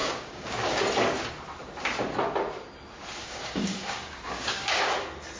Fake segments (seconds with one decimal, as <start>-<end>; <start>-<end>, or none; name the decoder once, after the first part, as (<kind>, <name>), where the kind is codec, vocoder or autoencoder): 0.0-0.8 (codec, DAC); 3.2-4.9